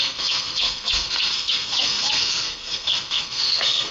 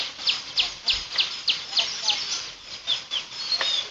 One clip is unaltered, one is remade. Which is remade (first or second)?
first